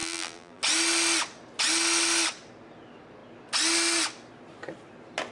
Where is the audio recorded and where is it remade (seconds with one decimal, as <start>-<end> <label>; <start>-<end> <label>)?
0.0-0.6 remade; 0.6-5.3 recorded